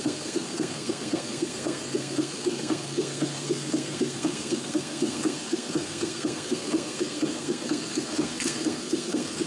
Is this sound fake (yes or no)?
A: yes